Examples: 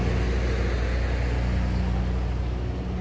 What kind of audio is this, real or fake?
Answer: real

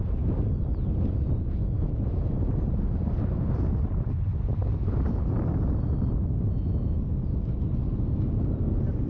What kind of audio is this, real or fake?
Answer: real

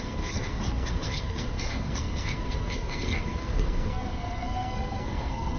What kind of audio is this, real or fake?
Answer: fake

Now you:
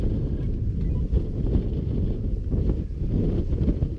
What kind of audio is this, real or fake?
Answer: real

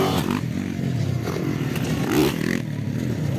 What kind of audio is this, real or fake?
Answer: real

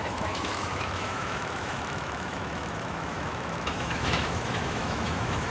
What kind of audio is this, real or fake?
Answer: fake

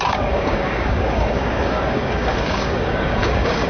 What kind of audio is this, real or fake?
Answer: fake